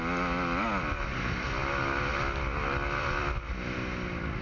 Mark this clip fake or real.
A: real